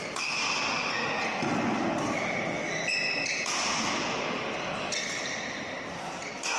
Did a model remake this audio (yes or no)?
no